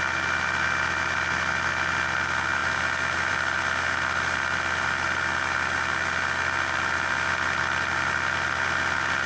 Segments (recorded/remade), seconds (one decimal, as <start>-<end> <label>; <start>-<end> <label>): 0.0-9.3 recorded